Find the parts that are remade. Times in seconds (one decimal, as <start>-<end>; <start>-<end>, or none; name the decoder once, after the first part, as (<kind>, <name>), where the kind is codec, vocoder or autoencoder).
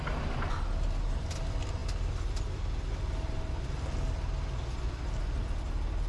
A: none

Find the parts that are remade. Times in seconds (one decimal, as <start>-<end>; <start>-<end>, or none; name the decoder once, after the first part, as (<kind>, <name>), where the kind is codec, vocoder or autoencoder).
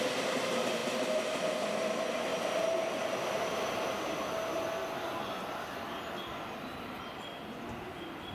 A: none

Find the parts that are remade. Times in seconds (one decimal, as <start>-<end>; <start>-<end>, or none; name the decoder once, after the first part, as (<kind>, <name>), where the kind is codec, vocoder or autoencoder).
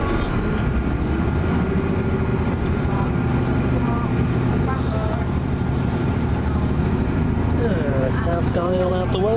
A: 2.3-4.5 (vocoder, BigVGAN v2); 5.0-8.9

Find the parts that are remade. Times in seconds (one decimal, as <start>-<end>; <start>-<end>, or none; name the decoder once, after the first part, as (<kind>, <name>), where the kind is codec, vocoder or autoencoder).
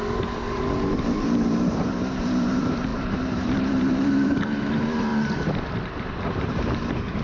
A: 0.0-5.1 (vocoder, BigVGAN v2); 5.7-7.2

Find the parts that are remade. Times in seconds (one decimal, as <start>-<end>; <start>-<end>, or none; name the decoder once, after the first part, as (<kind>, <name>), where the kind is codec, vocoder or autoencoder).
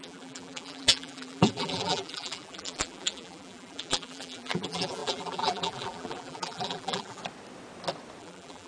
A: 0.0-7.2 (vocoder, BigVGAN v2); 8.2-8.7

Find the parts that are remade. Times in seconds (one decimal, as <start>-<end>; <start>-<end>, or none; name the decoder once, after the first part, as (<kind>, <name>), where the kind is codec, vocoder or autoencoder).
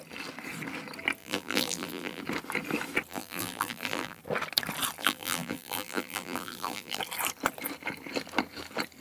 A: 1.2-2.2 (vocoder, BigVGAN v2); 3.1-4.2; 5.0-7.0